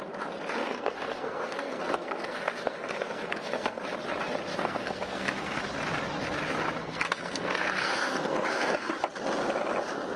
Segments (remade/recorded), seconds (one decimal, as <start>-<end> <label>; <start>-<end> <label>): 0.0-0.6 recorded; 0.6-3.8 remade; 3.8-4.5 recorded; 4.5-5.6 remade; 5.6-6.8 recorded; 6.8-8.9 remade; 8.9-10.2 recorded